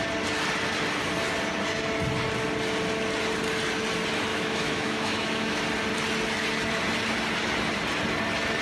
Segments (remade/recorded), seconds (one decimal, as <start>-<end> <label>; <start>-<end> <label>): 0.0-4.3 recorded; 4.3-5.6 remade; 5.6-8.6 recorded